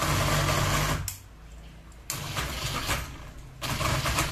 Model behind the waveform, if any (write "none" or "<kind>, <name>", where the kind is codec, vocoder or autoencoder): none